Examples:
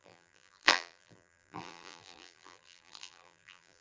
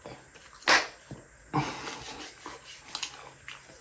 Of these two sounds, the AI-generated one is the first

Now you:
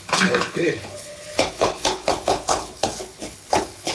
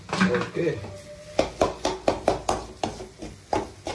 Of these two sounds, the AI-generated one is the first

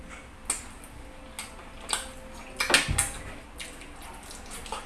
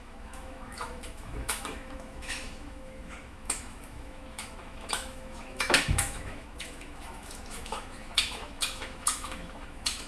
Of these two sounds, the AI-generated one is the second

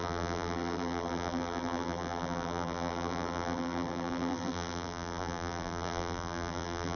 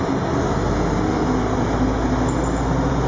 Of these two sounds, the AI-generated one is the first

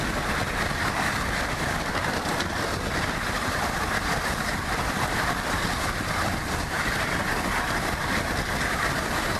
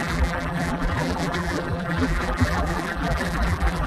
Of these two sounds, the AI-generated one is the second